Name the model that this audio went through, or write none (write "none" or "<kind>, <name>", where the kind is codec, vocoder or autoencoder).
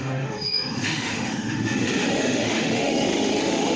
autoencoder, DAC-VAE